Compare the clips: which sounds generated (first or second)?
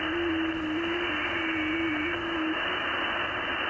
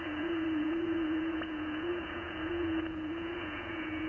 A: second